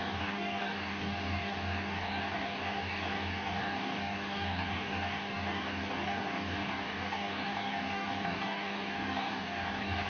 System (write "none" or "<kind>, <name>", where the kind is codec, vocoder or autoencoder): codec, DAC